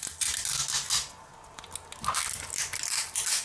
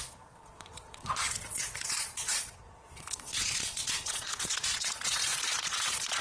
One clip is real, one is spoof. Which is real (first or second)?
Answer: first